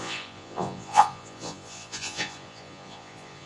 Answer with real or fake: fake